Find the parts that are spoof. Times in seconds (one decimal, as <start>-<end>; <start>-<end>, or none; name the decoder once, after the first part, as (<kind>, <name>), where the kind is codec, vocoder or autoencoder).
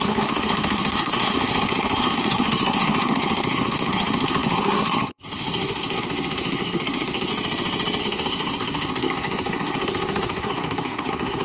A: 0.0-7.3 (codec, SNAC); 8.0-11.4